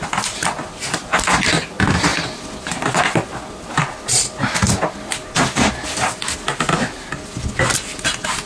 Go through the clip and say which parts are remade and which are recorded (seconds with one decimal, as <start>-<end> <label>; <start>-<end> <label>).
0.0-8.5 recorded

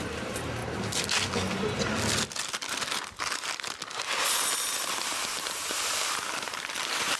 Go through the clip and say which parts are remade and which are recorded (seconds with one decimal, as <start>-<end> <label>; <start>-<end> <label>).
0.0-0.6 remade; 0.6-4.9 recorded; 4.9-7.2 remade

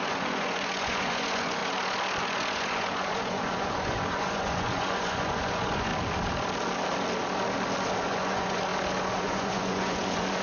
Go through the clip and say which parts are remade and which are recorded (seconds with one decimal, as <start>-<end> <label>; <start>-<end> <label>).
0.0-1.6 remade; 1.6-2.2 recorded; 2.2-5.9 remade; 5.9-8.0 recorded; 8.0-8.7 remade; 8.7-9.2 recorded; 9.2-10.4 remade

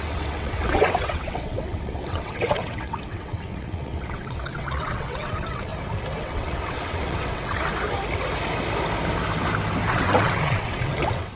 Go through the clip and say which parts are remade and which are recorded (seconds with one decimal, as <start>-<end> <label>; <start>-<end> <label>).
0.0-5.7 remade; 5.7-6.2 recorded; 6.2-7.7 remade; 7.7-9.9 recorded; 9.9-11.4 remade

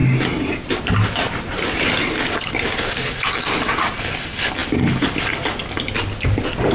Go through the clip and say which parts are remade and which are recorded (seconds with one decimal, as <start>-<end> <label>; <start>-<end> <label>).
0.0-6.7 recorded